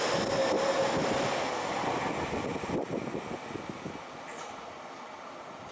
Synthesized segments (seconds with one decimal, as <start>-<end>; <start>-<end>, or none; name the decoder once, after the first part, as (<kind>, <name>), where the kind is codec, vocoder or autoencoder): none